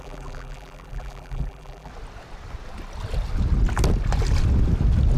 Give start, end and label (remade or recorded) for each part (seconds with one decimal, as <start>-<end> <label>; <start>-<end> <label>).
0.0-1.9 remade; 1.9-5.2 recorded